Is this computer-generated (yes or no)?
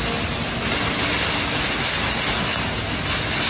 no